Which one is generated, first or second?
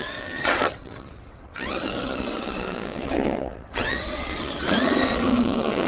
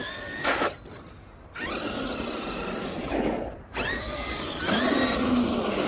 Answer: first